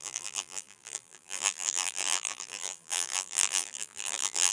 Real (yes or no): no